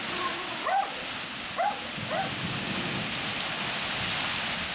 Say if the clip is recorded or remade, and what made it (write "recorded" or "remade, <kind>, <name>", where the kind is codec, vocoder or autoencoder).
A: recorded